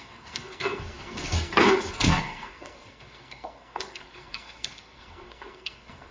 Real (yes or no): no